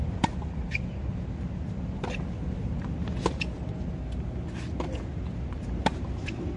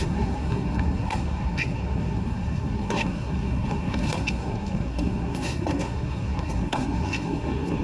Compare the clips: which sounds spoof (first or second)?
second